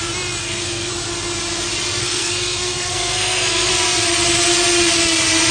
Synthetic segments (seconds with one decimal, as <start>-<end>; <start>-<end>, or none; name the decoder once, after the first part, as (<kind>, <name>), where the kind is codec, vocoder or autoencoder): 0.4-0.9 (codec, SNAC); 2.0-3.7